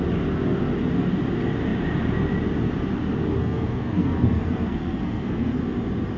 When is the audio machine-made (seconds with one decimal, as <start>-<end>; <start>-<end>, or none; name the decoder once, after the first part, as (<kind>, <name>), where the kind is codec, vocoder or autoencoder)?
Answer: 3.4-5.6 (codec, SNAC)